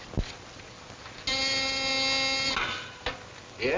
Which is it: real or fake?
real